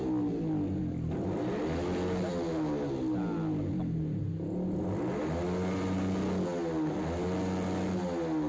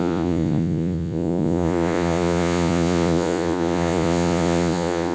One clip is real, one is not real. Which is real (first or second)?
first